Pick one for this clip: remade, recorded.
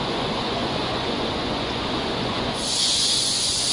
remade